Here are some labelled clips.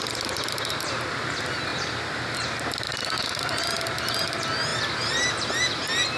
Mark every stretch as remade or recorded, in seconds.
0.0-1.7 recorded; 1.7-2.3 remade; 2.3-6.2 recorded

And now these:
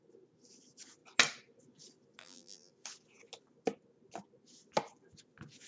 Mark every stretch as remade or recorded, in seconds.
0.0-2.2 recorded; 2.2-2.7 remade; 2.7-5.7 recorded

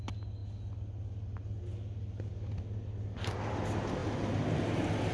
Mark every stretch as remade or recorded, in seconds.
0.0-5.1 recorded

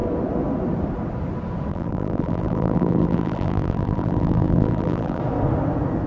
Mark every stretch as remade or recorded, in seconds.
0.0-1.7 recorded; 1.7-5.2 remade; 5.2-6.1 recorded

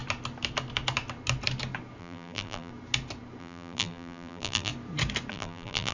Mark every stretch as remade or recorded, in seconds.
0.0-2.0 recorded; 2.0-2.7 remade; 2.7-3.4 recorded; 3.4-4.7 remade; 4.7-5.3 recorded; 5.3-5.9 remade

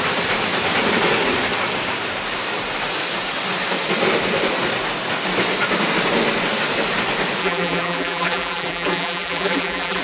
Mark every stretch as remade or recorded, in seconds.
0.0-7.4 recorded; 7.4-10.0 remade